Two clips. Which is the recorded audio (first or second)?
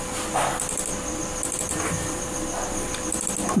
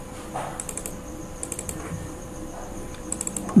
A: first